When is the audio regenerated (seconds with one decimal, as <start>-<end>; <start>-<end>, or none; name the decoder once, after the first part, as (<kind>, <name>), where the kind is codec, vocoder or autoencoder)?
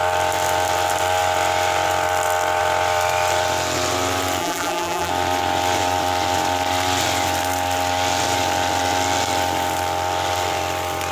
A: 4.4-5.1 (vocoder, BigVGAN v2)